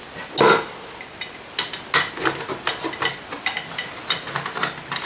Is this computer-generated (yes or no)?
no